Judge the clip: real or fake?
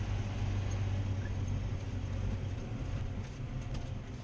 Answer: real